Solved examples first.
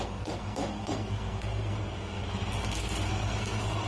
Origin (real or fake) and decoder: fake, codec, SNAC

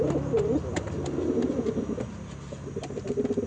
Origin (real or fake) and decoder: real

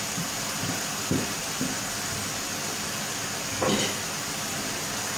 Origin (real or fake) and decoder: real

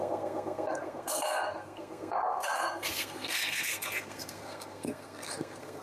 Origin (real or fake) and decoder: fake, codec, SNAC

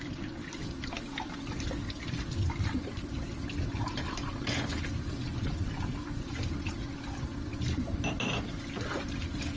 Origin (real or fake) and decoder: real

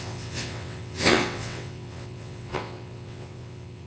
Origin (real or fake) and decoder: fake, vocoder, WaveNeXt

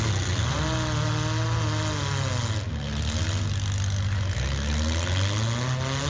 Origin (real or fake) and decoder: real